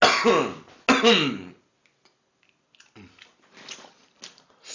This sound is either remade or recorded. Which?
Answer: recorded